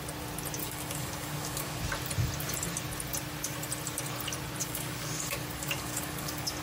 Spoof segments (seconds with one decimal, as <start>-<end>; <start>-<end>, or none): 0.6-1.8; 4.6-6.6